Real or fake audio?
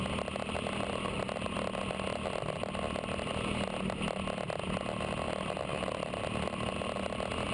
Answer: real